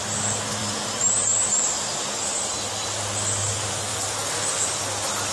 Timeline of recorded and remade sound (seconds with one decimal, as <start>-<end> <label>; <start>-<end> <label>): 0.0-0.6 recorded; 0.6-2.7 remade; 2.7-5.3 recorded